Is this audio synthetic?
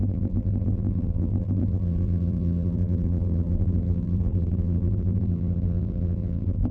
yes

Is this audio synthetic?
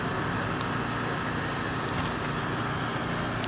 no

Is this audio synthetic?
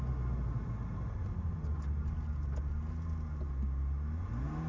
no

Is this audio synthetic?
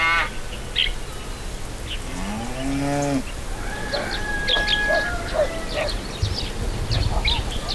no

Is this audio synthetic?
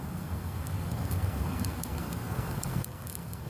yes